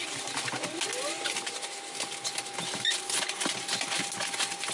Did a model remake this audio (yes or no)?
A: no